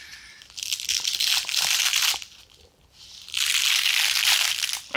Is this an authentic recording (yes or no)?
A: no